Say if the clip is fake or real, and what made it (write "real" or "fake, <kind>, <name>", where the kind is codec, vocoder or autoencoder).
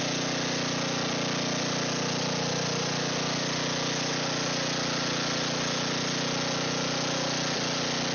real